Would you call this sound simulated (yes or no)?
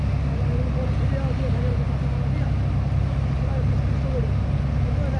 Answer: no